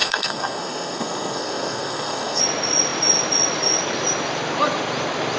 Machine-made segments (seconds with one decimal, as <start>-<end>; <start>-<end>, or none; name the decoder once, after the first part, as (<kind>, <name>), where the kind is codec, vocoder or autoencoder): 0.0-2.4 (codec, SNAC)